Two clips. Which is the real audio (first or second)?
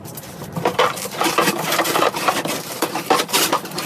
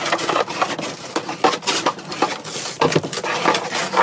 second